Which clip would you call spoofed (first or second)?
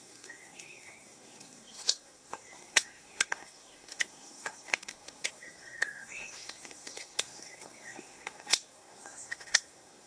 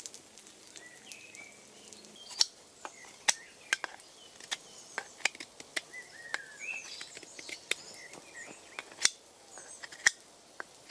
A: first